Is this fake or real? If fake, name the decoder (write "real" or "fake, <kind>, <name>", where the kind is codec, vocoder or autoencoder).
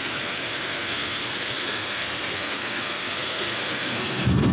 fake, codec, SNAC